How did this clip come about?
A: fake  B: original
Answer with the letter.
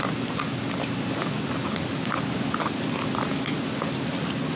B